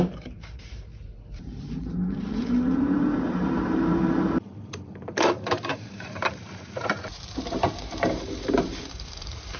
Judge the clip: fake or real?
fake